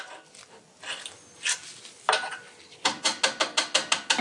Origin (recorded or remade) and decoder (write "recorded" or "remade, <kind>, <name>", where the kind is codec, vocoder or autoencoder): recorded